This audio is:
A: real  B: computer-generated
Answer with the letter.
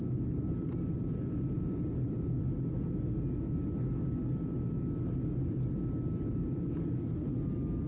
A